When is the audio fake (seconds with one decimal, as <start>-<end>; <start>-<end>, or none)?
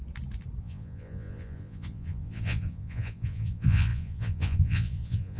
0.6-5.4